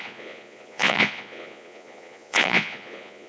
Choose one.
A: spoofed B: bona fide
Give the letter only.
A